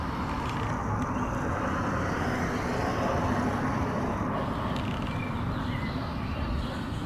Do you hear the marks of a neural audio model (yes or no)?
no